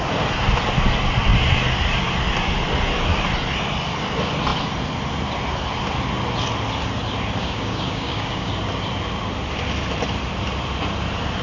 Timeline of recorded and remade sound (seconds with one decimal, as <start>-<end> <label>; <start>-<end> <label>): 0.0-7.4 recorded; 7.4-8.5 remade; 8.5-11.4 recorded